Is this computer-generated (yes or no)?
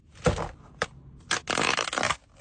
no